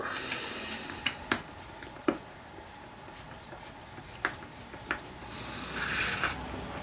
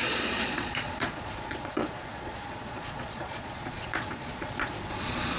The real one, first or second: first